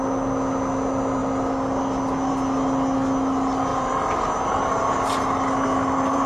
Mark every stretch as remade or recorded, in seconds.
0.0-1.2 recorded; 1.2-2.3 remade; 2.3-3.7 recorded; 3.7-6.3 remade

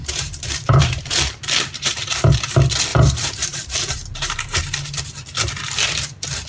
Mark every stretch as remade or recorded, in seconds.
0.0-2.3 remade; 2.3-2.9 recorded; 2.9-4.6 remade; 4.6-6.5 recorded

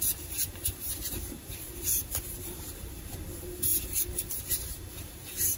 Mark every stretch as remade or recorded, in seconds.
0.0-3.7 remade; 3.7-5.6 recorded

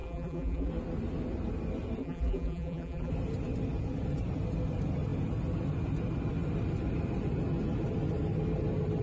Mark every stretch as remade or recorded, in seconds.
0.0-0.7 remade; 0.7-2.0 recorded; 2.0-3.1 remade; 3.1-9.0 recorded

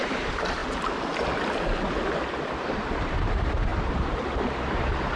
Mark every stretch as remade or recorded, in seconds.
0.0-0.6 remade; 0.6-2.3 recorded; 2.3-5.2 remade